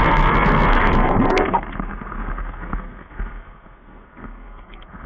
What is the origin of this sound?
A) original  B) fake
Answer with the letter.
B